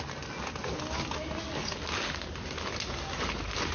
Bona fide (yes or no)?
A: yes